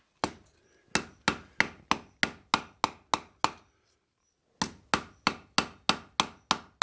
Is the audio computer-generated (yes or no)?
no